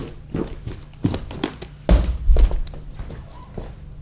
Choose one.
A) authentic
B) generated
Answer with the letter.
A